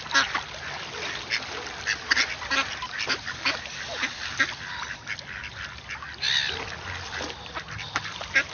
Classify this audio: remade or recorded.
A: recorded